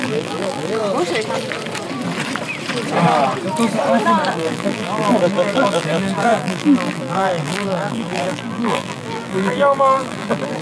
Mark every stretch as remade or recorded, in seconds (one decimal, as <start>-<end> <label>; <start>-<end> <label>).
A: 0.0-0.8 remade; 0.8-4.3 recorded; 4.3-10.6 remade